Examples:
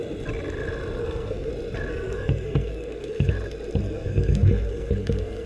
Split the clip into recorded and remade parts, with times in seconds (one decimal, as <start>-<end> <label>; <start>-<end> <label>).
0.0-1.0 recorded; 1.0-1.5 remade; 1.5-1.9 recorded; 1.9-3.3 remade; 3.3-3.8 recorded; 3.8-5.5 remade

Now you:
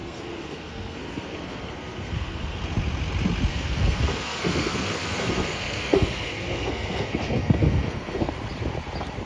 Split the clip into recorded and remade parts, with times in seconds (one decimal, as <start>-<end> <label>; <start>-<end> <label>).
0.0-2.6 remade; 2.6-3.5 recorded; 3.5-8.3 remade; 8.3-9.3 recorded

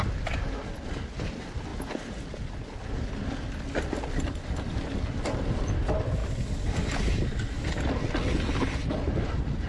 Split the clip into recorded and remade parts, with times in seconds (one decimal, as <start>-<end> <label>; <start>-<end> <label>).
0.0-9.7 recorded

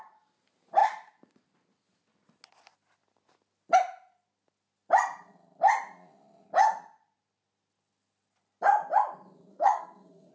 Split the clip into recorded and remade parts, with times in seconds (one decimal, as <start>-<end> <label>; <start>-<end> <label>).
0.0-9.5 recorded; 9.5-10.3 remade

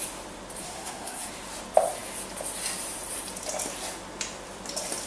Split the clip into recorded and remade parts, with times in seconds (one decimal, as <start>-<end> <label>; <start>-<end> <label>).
0.0-0.6 recorded; 0.6-1.3 remade; 1.3-5.1 recorded

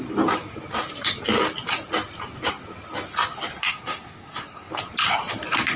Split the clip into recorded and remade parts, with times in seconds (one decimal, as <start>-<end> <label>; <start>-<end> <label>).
0.0-3.6 recorded; 3.6-4.7 remade; 4.7-5.8 recorded